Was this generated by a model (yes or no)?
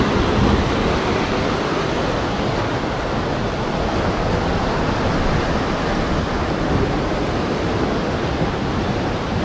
no